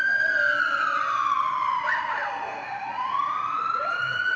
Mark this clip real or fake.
real